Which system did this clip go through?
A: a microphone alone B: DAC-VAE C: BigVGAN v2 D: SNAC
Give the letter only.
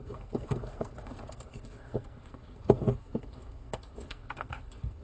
D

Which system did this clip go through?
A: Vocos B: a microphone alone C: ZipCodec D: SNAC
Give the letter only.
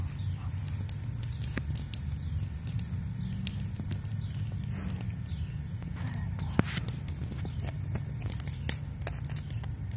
B